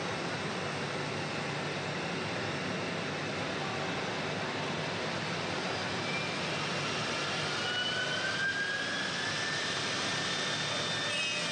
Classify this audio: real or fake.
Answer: real